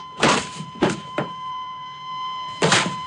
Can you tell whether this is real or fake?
fake